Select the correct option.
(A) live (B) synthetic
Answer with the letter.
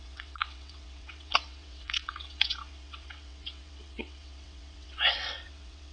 B